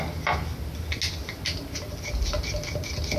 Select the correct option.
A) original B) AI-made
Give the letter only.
A